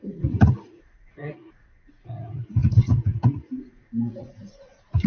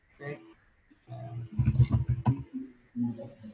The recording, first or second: second